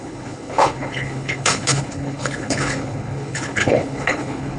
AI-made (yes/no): yes